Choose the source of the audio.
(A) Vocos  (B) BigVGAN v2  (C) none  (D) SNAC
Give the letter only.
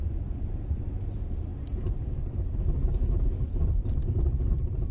B